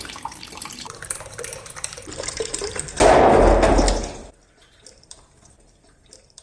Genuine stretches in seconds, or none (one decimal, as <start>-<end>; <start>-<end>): 2.9-4.9